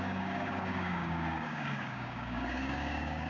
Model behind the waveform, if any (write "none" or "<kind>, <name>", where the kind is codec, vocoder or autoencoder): codec, DAC